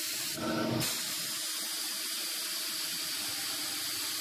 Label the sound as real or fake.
real